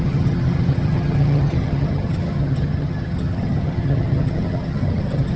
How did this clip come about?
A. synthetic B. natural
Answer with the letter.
A